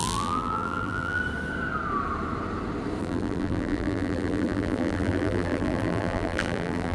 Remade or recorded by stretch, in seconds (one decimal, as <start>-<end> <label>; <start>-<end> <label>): 0.0-1.2 remade; 1.2-3.0 recorded; 3.0-6.9 remade